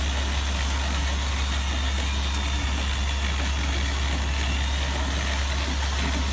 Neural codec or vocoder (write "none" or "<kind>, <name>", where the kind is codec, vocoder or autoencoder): none